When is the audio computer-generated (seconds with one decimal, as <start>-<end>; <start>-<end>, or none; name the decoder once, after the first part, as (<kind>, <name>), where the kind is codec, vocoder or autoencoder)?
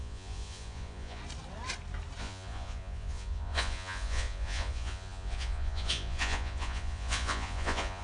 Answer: 0.0-1.2 (vocoder, Vocos); 2.2-8.0